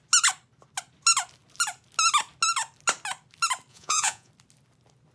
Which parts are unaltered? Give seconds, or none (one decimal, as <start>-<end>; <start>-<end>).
0.0-3.7; 4.3-5.1